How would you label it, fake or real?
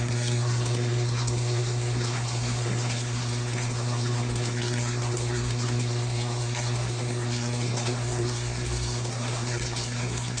fake